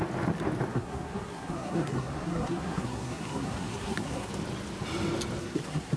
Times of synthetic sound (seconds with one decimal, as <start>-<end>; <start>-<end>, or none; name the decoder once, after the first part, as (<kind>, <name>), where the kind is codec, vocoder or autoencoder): 0.7-4.3 (codec, SNAC); 5.4-6.0